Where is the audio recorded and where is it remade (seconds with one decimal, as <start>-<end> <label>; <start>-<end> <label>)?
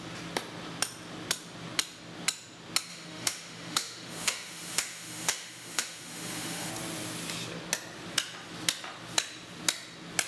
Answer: 0.0-2.9 recorded; 2.9-6.7 remade; 6.7-10.3 recorded